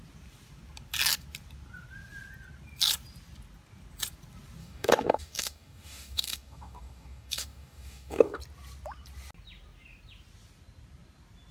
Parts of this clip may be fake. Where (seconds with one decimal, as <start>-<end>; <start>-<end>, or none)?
4.6-8.4